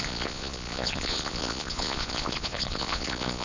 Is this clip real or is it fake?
fake